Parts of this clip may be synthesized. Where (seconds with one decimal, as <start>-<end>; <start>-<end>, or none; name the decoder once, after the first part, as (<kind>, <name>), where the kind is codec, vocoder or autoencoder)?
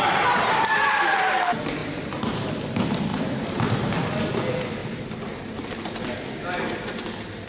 1.8-2.5 (vocoder, BigVGAN v2); 3.1-4.1; 4.8-5.6